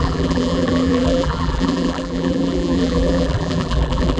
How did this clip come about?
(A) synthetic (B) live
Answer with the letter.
A